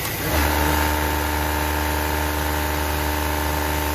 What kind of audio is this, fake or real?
real